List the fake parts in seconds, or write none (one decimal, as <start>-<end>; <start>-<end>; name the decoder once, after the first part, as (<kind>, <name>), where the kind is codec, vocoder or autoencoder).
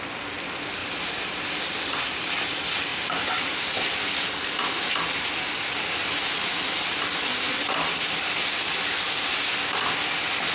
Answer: 0.8-2.0 (vocoder, BigVGAN v2); 2.9-3.5